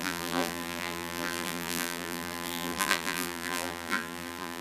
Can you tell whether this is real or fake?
fake